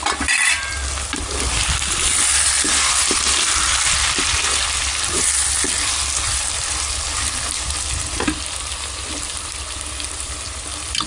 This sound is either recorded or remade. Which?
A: remade